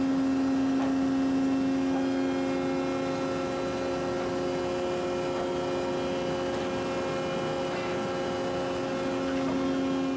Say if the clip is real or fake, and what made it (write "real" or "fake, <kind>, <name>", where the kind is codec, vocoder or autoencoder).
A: real